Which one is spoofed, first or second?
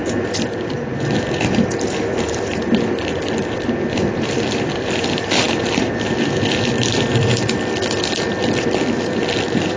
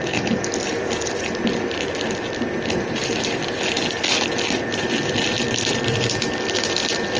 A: first